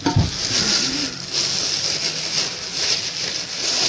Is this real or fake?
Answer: real